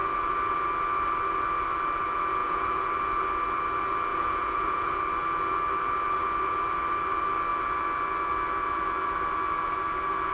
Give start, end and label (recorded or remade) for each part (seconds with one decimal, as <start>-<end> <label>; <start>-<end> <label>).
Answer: 0.0-2.4 recorded; 2.4-2.9 remade; 2.9-4.1 recorded; 4.1-5.0 remade; 5.0-10.3 recorded